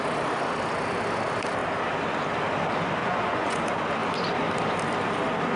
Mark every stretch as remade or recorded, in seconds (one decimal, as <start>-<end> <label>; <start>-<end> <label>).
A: 0.0-3.0 recorded; 3.0-3.6 remade; 3.6-5.6 recorded